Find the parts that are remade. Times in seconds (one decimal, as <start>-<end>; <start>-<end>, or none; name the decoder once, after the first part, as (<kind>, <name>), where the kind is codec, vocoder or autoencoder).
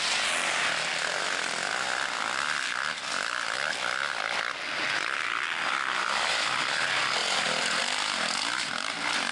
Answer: none